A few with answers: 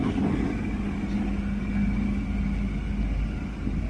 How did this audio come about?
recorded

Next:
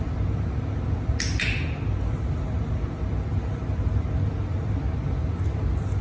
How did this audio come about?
recorded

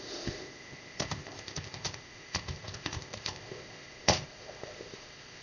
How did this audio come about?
remade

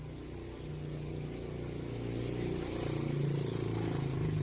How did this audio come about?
recorded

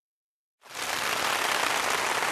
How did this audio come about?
recorded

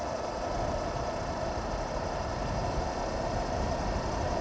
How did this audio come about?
recorded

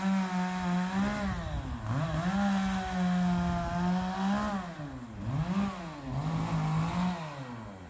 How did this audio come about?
recorded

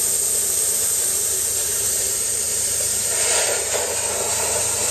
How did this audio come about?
recorded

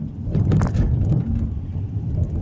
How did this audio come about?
recorded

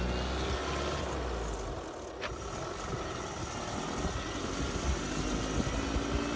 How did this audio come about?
recorded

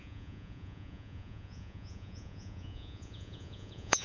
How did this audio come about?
remade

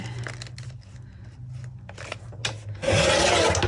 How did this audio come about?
recorded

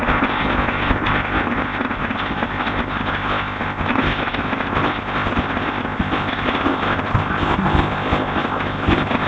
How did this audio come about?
remade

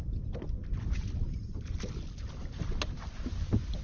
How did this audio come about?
recorded